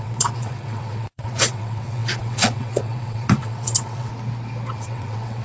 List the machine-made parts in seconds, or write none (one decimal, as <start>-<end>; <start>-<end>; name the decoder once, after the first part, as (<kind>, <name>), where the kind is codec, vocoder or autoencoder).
0.0-4.1 (vocoder, WaveNeXt); 4.7-5.4